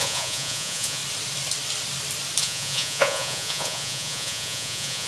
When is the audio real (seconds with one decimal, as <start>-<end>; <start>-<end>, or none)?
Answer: 1.0-2.4